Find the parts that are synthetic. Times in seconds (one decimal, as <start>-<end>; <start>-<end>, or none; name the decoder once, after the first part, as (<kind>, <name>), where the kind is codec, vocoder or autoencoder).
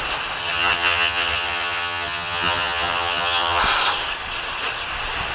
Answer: 0.4-3.6 (vocoder, HiFi-GAN)